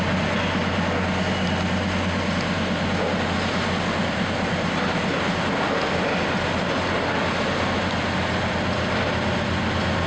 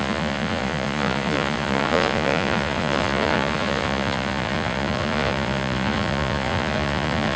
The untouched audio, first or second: first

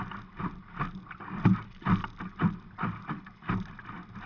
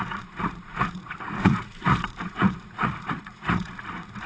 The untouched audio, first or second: first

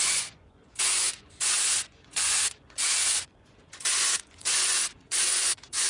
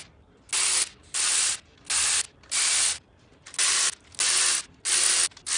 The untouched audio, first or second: second